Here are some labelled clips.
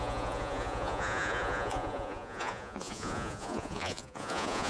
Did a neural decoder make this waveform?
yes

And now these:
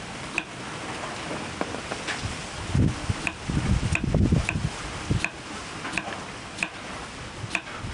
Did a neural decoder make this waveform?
no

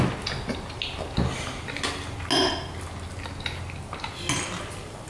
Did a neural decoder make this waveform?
no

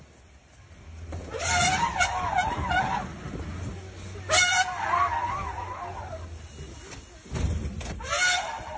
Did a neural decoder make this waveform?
no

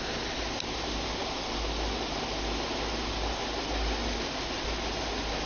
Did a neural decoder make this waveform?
no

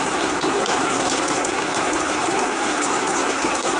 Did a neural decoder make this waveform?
yes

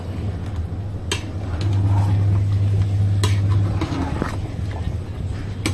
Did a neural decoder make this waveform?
no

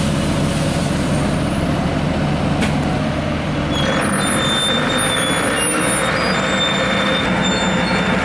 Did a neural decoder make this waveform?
no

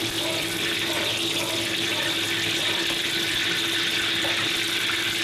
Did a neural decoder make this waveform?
no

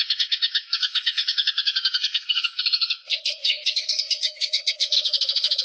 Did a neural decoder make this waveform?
yes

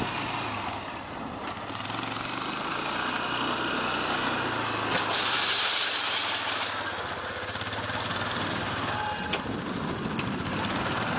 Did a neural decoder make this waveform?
no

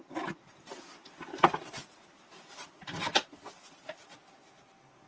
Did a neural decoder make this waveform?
no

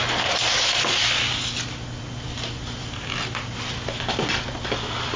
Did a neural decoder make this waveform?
no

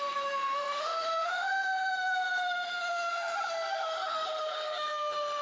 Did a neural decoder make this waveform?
yes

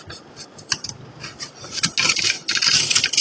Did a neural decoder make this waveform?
no